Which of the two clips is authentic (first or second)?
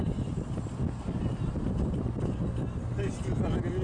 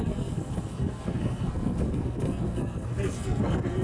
first